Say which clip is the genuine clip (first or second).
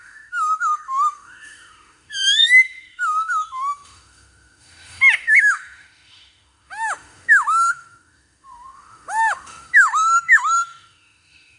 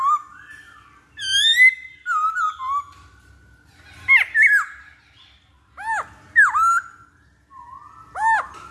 second